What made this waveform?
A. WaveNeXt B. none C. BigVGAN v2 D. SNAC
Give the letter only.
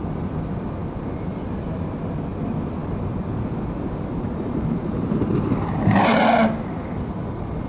B